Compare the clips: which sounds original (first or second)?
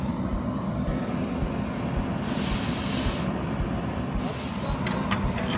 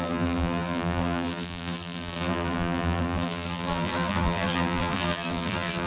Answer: first